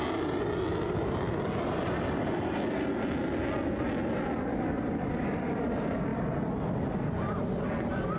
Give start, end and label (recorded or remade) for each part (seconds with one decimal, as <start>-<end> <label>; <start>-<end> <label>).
0.0-4.5 recorded; 4.5-5.5 remade; 5.5-8.2 recorded